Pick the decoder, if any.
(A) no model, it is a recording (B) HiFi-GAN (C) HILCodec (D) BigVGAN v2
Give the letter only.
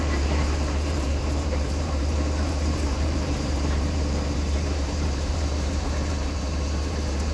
D